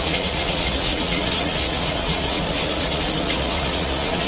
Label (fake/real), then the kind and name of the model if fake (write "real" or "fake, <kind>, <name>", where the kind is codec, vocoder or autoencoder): fake, vocoder, Vocos